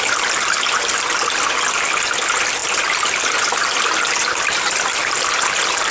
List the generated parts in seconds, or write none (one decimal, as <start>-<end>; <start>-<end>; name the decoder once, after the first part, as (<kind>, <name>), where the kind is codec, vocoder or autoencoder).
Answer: none